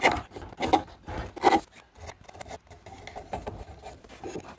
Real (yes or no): yes